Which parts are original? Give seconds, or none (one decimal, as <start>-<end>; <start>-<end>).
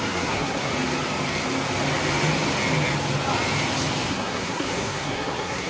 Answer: 0.7-4.1